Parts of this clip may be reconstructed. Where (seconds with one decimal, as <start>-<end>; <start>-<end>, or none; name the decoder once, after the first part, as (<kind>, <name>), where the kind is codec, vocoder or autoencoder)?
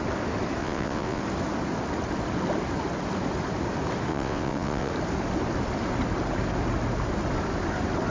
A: 0.6-1.2 (vocoder, WaveNeXt); 4.1-4.9